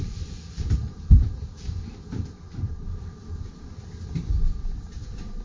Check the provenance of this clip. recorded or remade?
remade